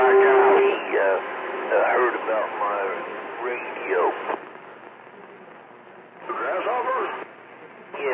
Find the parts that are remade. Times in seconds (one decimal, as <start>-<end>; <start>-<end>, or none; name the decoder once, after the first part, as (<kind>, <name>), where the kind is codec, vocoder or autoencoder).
0.4-1.7 (autoencoder, DAC-VAE)